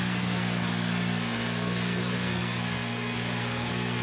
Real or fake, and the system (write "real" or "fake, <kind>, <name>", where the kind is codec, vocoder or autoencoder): fake, codec, SNAC